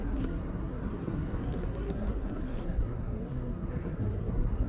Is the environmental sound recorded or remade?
remade